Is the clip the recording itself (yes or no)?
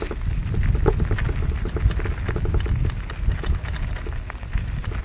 yes